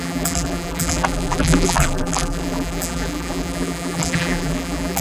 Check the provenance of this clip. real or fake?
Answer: fake